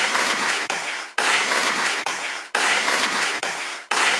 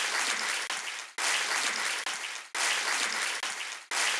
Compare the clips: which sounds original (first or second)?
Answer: second